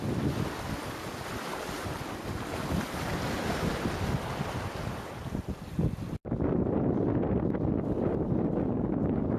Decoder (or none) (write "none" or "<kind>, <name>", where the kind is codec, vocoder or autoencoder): none